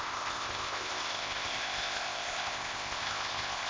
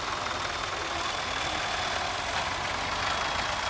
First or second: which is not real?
first